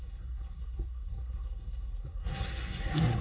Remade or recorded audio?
remade